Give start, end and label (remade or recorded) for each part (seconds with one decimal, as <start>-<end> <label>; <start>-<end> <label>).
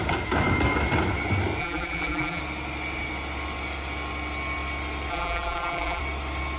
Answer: 0.0-1.6 recorded; 1.6-2.4 remade; 2.4-5.1 recorded; 5.1-6.0 remade; 6.0-6.6 recorded